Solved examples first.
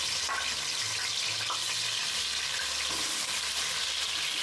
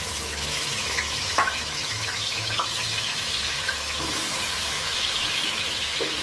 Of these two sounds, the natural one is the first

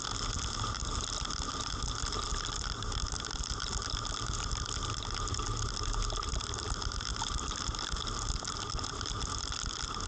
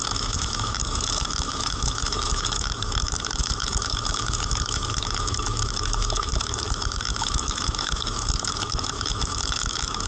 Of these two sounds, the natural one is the first